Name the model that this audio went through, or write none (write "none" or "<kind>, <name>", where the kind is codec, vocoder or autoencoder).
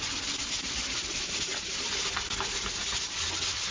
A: none